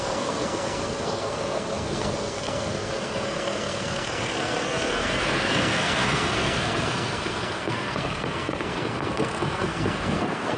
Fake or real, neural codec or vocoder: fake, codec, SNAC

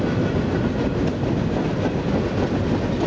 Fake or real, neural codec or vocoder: real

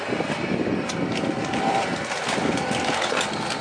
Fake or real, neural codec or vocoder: real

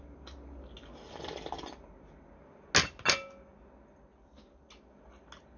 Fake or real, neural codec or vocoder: real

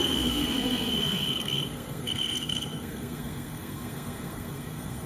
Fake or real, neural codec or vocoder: fake, codec, SNAC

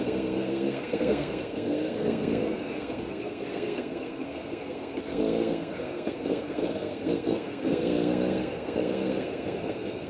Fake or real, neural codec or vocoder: fake, codec, SNAC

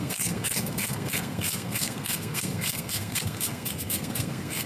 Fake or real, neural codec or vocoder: fake, codec, SNAC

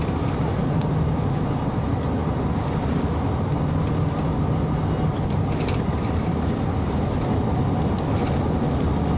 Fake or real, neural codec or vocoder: real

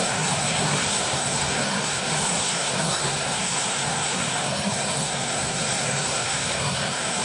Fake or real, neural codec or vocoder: fake, codec, SNAC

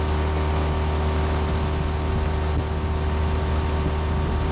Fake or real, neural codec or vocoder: real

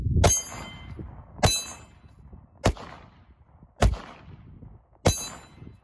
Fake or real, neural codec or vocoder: real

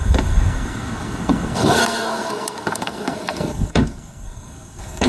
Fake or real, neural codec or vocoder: fake, codec, SNAC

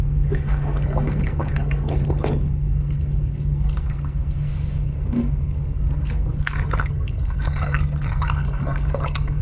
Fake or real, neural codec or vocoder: fake, codec, SNAC